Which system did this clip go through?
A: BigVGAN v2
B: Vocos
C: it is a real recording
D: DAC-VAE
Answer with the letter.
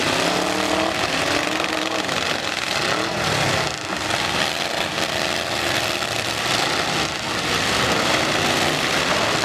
C